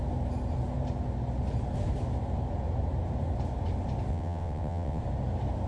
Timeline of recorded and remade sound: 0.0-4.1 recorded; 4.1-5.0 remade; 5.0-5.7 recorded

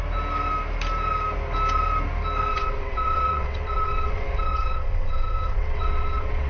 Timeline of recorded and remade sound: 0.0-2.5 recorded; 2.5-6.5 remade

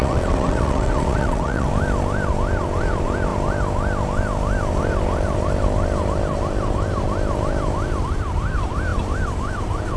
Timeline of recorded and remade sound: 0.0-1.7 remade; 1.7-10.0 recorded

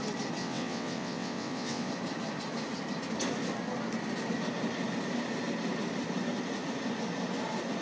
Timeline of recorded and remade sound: 0.0-0.4 recorded; 0.4-1.9 remade; 1.9-7.8 recorded

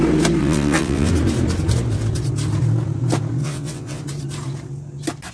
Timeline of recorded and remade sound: 0.0-0.4 recorded; 0.4-1.1 remade; 1.1-3.4 recorded; 3.4-4.0 remade; 4.0-5.3 recorded